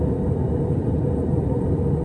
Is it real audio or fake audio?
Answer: real